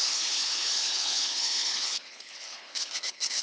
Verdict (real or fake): fake